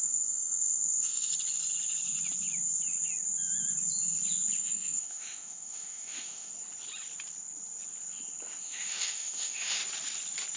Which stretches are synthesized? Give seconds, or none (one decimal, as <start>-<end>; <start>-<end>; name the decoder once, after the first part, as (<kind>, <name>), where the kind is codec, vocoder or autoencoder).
0.0-1.3 (autoencoder, DAC-VAE); 4.6-6.5; 8.6-9.8